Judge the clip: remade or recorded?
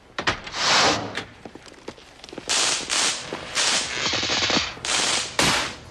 remade